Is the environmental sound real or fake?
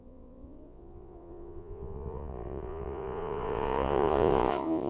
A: fake